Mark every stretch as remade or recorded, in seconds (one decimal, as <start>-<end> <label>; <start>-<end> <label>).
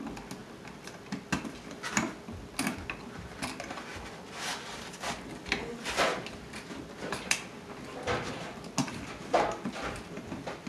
0.0-10.7 recorded